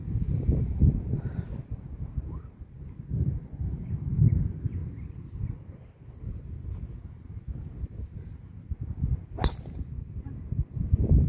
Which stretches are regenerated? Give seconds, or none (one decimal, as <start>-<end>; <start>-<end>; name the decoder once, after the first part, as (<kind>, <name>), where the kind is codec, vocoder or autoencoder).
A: none